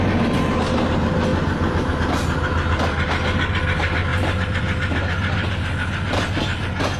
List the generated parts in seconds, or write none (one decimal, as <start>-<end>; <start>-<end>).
none